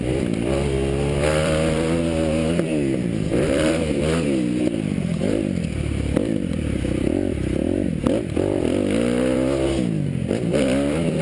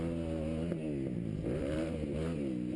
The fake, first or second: first